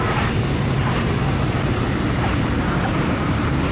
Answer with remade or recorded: remade